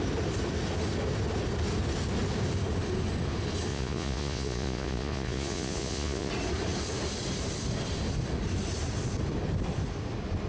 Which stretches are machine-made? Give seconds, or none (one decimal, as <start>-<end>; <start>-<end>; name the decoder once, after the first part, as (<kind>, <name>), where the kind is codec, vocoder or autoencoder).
3.7-6.3 (vocoder, Vocos)